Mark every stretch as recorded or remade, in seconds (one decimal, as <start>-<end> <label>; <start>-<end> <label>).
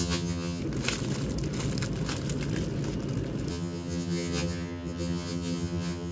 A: 0.0-0.6 remade; 0.6-3.5 recorded; 3.5-6.1 remade